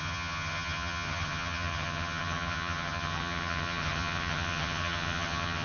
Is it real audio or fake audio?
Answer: fake